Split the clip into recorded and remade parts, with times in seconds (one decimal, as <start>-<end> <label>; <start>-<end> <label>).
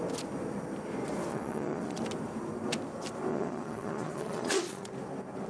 0.0-1.3 recorded; 1.3-2.0 remade; 2.0-3.3 recorded; 3.3-4.9 remade; 4.9-5.5 recorded